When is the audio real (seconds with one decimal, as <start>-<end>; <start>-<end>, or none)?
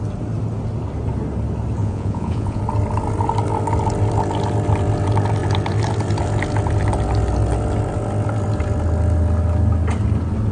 0.0-1.8; 2.6-10.5